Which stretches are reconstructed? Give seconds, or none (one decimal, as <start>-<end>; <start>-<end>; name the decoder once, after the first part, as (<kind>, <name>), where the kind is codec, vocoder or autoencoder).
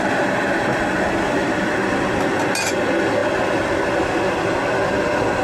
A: 3.2-3.9 (vocoder, BigVGAN v2)